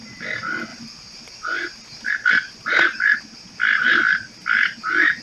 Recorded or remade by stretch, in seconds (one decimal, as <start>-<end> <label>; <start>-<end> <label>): 0.0-5.2 recorded